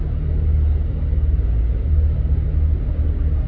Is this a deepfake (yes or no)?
no